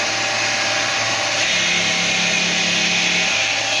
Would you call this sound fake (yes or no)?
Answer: no